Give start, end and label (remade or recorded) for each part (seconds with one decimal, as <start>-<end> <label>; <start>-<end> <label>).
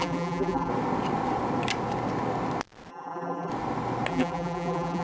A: 0.0-0.7 remade; 0.7-2.9 recorded; 2.9-3.5 remade; 3.5-4.1 recorded; 4.1-5.0 remade